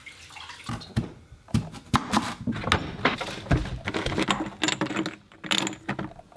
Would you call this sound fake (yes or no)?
no